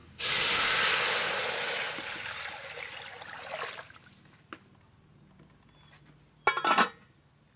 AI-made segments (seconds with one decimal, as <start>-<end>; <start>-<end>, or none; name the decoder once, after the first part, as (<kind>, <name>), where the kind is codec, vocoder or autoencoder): none